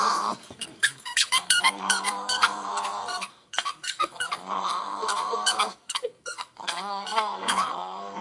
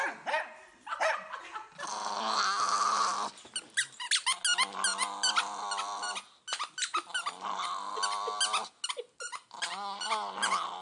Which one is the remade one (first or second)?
first